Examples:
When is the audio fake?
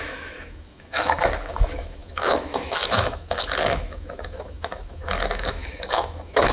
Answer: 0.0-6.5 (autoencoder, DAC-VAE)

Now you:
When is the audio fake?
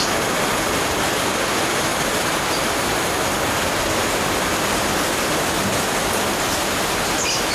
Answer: 1.9-3.5 (vocoder, BigVGAN v2)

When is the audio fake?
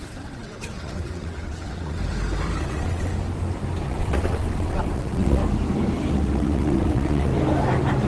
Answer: 0.0-2.0 (vocoder, WaveNeXt); 2.6-3.1; 3.8-5.4; 6.1-7.3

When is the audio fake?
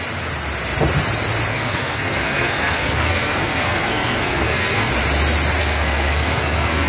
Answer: 1.5-4.9 (codec, SNAC); 5.6-6.9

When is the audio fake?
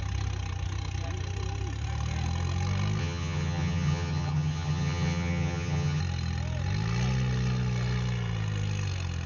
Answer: 3.0-6.0 (vocoder, HiFi-GAN)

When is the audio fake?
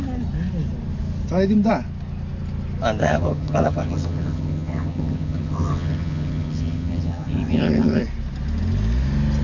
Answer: 3.0-8.0 (vocoder, HiFi-GAN)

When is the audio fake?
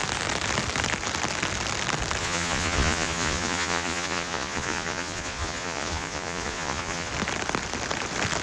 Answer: 2.2-7.1 (vocoder, Vocos)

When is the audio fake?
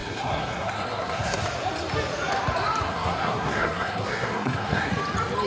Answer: 0.0-1.4 (codec, SNAC); 2.9-4.9